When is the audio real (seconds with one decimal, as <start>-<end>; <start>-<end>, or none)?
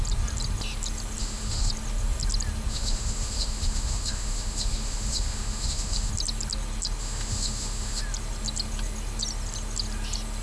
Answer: 0.0-1.2; 1.7-2.7; 6.1-7.0; 8.0-10.4